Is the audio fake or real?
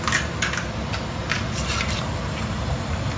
real